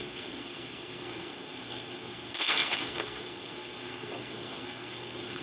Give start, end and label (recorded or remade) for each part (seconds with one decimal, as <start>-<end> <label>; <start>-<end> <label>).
0.0-5.4 remade